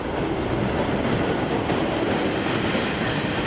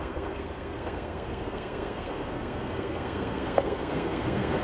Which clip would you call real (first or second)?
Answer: first